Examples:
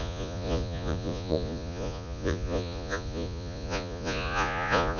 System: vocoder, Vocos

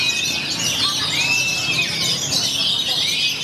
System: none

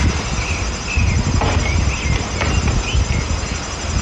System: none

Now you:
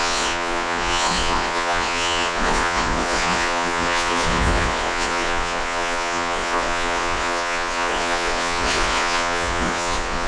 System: vocoder, Vocos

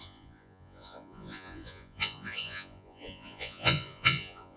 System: vocoder, Vocos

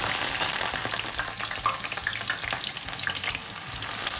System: none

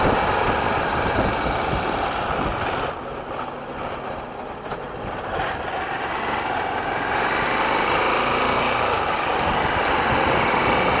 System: none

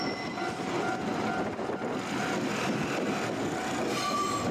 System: none